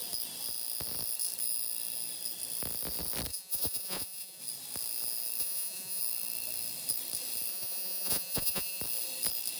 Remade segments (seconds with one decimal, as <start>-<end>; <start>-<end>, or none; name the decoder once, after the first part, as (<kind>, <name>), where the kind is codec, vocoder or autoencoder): 3.3-4.4 (vocoder, Vocos); 5.4-6.0; 7.5-8.8